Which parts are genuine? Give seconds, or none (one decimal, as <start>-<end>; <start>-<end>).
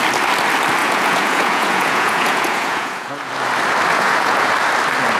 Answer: 0.0-0.8; 3.3-3.9; 4.5-5.2